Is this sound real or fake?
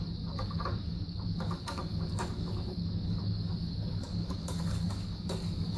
fake